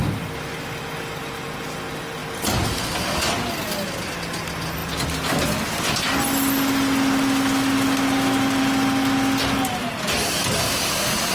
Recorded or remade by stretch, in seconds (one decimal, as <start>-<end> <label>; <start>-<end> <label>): 0.0-11.3 recorded